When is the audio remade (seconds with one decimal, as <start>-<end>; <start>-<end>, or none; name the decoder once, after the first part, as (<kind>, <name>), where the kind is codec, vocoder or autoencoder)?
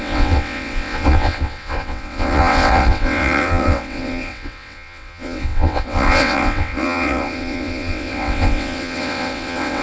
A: 0.0-9.8 (vocoder, WaveNeXt)